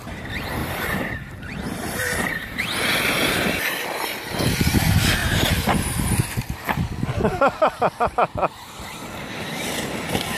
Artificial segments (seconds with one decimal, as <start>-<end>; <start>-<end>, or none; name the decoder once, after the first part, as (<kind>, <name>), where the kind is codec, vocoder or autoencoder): 0.6-2.6 (vocoder, BigVGAN v2); 5.2-5.9